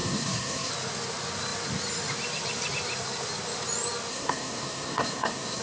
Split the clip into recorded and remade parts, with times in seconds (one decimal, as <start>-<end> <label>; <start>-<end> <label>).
0.0-0.7 remade; 0.7-4.1 recorded; 4.1-5.6 remade